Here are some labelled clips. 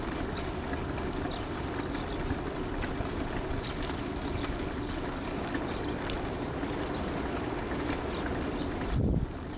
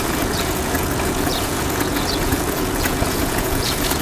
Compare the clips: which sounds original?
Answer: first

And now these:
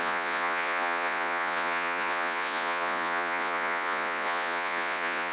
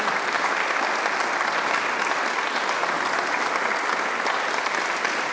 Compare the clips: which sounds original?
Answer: second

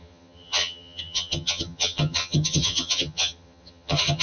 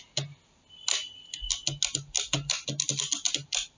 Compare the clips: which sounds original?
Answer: second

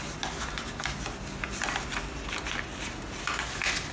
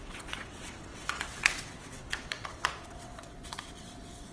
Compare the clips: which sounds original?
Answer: first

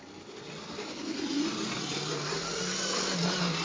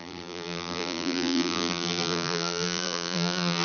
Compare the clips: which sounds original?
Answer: first